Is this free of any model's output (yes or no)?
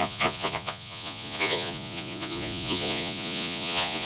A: no